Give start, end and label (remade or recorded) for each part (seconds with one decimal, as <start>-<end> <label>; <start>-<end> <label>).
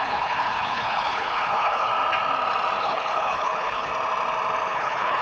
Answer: 0.0-1.9 remade; 1.9-2.8 recorded; 2.8-3.9 remade; 3.9-4.7 recorded; 4.7-5.2 remade